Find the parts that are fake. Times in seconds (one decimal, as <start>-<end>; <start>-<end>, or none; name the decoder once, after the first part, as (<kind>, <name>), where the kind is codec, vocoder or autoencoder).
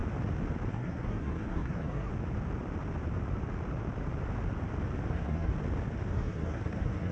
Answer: 0.7-2.1 (codec, SNAC); 5.1-5.5; 6.1-7.1